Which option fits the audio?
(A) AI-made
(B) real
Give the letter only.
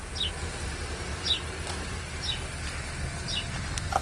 B